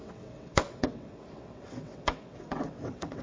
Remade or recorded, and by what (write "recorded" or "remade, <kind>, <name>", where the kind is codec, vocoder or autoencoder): remade, vocoder, WaveNeXt